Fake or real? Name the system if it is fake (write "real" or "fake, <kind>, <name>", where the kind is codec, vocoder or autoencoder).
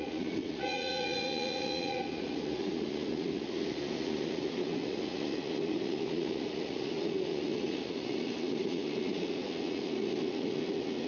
fake, vocoder, Vocos